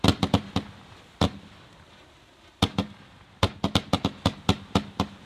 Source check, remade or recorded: recorded